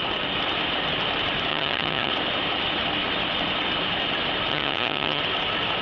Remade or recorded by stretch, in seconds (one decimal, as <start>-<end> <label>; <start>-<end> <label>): 0.0-1.5 recorded; 1.5-2.1 remade; 2.1-4.5 recorded; 4.5-5.2 remade; 5.2-5.8 recorded